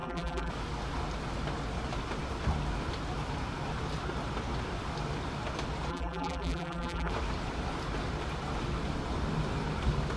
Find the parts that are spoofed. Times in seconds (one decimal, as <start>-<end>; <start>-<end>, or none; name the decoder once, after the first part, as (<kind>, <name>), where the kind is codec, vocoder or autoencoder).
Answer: 0.0-0.5 (vocoder, BigVGAN v2); 5.9-7.1